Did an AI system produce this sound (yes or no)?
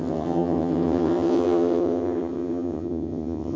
yes